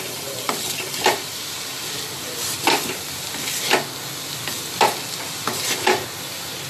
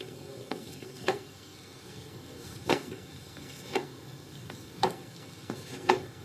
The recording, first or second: first